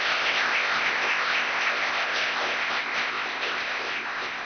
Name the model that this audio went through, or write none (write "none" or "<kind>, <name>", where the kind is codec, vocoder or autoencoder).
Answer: codec, ZipCodec